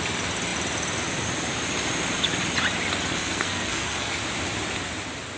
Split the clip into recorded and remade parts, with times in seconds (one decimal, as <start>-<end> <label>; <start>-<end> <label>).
0.0-3.1 recorded; 3.1-4.1 remade; 4.1-5.4 recorded